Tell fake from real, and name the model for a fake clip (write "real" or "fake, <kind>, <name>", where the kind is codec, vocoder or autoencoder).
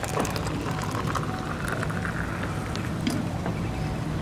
real